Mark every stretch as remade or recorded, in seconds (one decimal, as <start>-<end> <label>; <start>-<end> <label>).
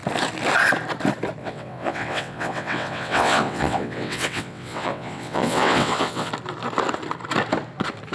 0.0-1.4 recorded; 1.4-6.3 remade; 6.3-8.1 recorded